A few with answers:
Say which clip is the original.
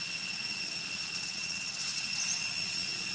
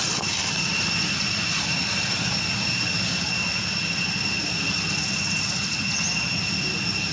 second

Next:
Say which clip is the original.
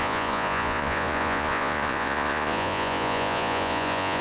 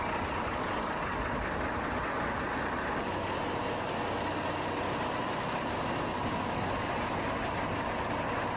second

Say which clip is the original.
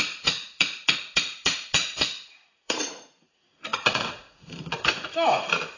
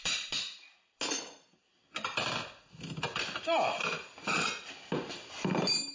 second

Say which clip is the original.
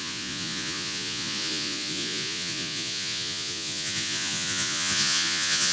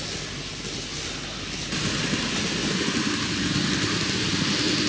second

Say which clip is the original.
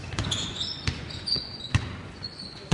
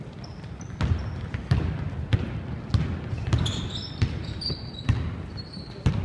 second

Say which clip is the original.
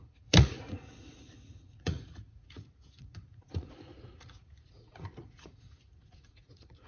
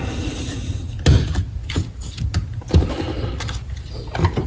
second